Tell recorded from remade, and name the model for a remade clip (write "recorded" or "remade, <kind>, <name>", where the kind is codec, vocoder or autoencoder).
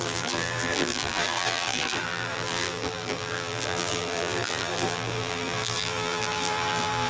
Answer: remade, vocoder, BigVGAN v2